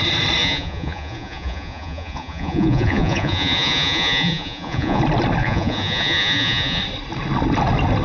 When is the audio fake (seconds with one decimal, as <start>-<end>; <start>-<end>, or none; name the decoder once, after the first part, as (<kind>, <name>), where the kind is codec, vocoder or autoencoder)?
0.4-5.0 (vocoder, Vocos); 5.4-6.8